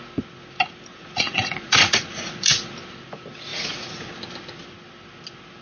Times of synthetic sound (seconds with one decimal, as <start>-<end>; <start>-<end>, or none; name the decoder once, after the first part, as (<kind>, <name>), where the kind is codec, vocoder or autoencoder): 0.9-2.5 (vocoder, Vocos); 3.5-4.1

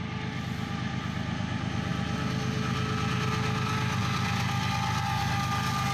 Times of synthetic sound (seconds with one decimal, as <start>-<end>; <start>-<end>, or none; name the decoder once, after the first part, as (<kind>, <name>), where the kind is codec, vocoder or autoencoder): none